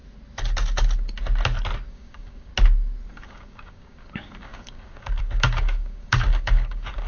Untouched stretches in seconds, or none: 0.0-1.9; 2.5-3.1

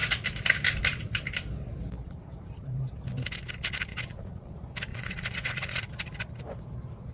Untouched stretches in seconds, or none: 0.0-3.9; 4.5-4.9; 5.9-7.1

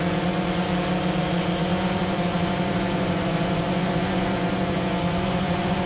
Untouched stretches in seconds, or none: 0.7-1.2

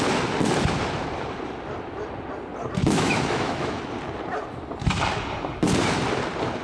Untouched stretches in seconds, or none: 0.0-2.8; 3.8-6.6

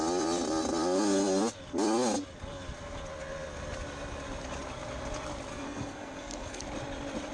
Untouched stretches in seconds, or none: 0.0-5.5; 6.6-7.3